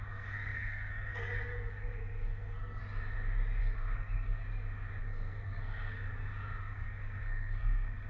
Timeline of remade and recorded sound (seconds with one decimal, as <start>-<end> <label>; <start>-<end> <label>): 0.0-2.8 remade; 2.8-3.6 recorded; 3.6-4.4 remade; 4.4-5.0 recorded; 5.0-6.1 remade; 6.1-6.6 recorded; 6.6-8.1 remade